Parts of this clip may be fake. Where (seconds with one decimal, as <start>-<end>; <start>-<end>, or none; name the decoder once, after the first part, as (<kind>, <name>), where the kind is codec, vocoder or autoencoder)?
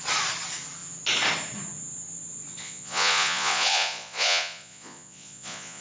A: 2.6-5.8 (vocoder, Vocos)